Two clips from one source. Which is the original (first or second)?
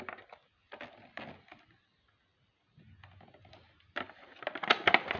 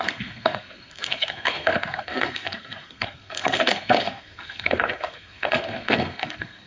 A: first